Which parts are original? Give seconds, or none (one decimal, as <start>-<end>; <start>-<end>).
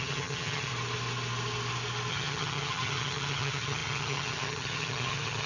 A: 0.7-2.1